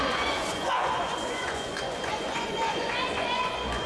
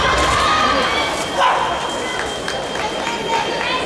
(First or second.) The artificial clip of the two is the first